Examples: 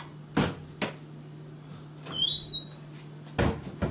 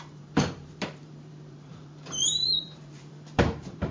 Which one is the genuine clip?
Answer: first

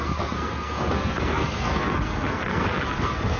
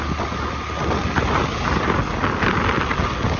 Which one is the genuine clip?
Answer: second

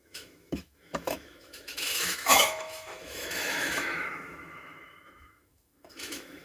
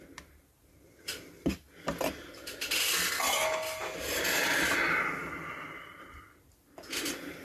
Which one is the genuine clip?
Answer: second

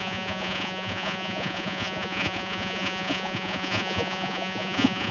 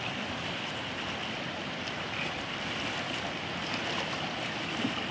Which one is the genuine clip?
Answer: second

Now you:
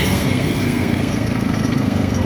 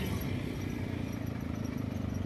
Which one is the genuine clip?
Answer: second